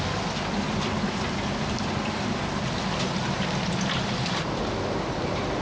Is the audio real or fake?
real